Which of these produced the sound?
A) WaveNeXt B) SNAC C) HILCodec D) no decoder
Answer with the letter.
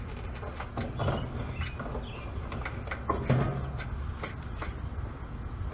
D